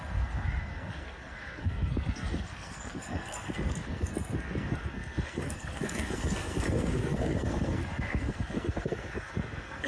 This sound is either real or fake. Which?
fake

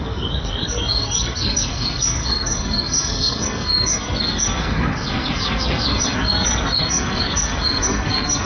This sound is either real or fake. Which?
fake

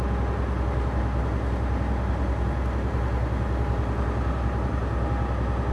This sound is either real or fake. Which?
real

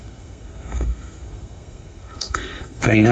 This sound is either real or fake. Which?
fake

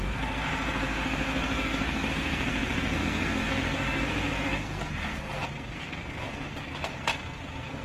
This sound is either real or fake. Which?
fake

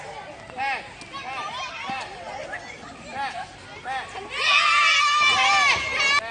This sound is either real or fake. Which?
real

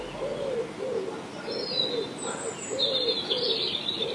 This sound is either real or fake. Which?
real